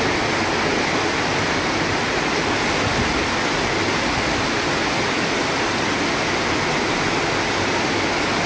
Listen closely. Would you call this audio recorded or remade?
recorded